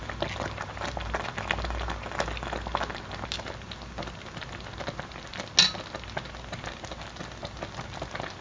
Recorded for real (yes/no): yes